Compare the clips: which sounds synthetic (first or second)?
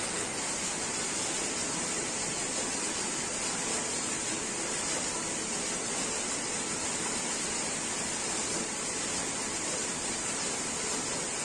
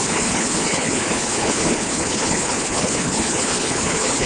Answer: second